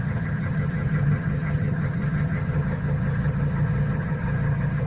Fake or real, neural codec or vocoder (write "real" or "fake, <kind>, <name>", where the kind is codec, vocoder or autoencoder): fake, vocoder, HiFi-GAN